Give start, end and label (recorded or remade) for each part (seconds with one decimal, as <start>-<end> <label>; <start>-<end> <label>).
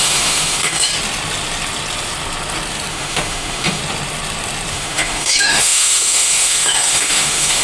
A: 0.0-0.9 remade; 0.9-2.9 recorded; 2.9-3.8 remade; 3.8-4.7 recorded; 4.7-7.6 remade